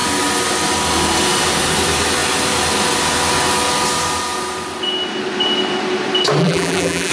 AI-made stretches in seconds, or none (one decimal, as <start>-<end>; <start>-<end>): 6.4-7.1